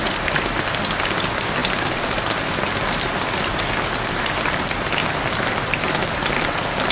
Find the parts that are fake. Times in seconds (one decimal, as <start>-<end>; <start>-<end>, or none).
none